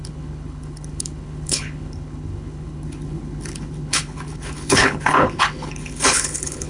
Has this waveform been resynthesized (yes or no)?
yes